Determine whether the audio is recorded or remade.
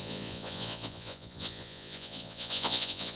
remade